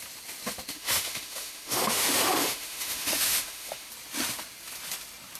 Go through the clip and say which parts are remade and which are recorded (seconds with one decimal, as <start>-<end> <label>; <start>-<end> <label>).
0.0-0.7 recorded; 0.7-3.9 remade; 3.9-5.4 recorded